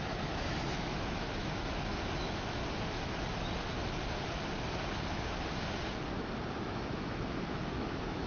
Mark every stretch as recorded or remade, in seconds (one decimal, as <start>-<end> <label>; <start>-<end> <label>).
0.0-2.6 remade; 2.6-3.4 recorded; 3.4-3.8 remade; 3.8-6.5 recorded; 6.5-8.3 remade